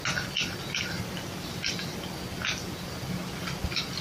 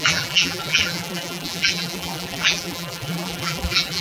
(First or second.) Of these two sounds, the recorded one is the first